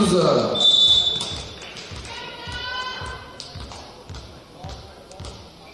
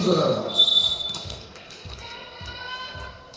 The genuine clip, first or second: first